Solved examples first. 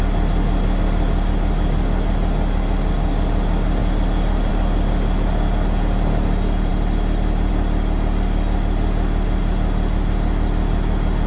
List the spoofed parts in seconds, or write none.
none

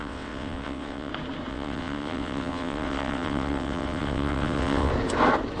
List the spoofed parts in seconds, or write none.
0.0-1.1; 1.5-4.9